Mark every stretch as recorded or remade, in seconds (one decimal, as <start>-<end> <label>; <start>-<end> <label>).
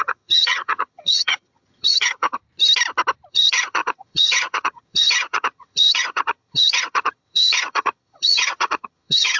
0.0-2.4 remade; 2.4-3.3 recorded; 3.3-9.4 remade